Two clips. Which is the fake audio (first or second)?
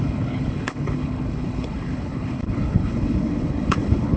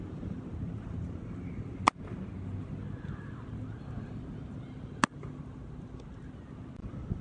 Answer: first